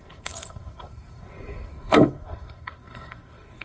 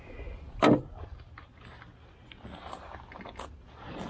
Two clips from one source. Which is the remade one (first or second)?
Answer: first